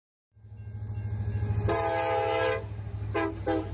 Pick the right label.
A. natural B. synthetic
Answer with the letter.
A